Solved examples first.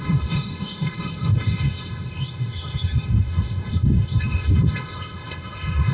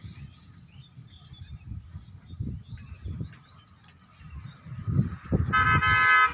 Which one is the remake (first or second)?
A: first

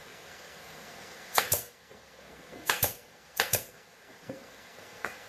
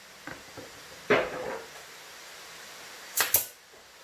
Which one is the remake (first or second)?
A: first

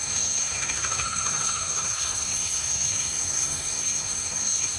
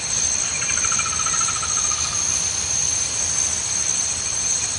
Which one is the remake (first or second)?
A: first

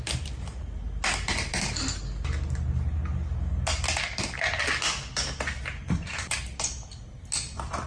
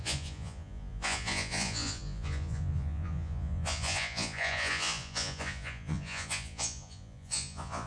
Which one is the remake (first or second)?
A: second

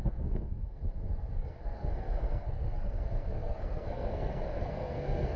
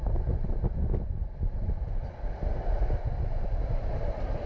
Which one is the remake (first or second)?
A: first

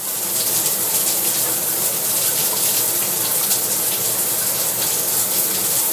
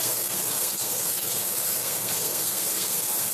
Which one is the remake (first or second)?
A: second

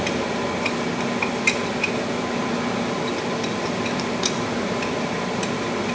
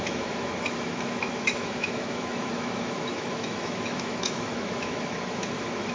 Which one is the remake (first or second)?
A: second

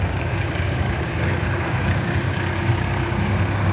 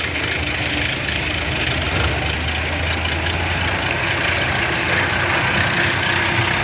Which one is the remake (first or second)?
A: first